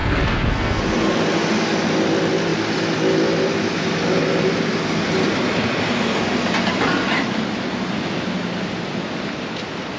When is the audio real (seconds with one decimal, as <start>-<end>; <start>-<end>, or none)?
0.8-10.0